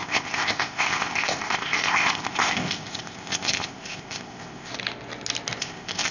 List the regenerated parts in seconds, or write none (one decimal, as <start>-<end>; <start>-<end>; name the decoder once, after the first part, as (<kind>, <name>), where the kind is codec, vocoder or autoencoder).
0.0-4.7 (codec, ZipCodec); 5.6-6.1